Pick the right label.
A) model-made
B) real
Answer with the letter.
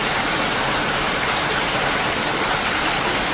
B